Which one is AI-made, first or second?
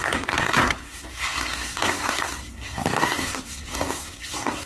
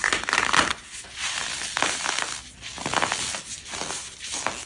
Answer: first